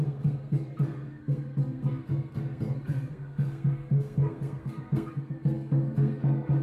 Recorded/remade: remade